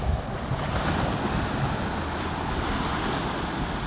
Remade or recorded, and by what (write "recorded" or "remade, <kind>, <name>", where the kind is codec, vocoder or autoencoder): recorded